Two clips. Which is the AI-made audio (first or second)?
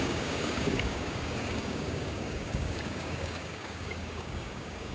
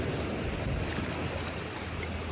first